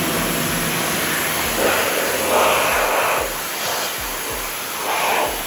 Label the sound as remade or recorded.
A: recorded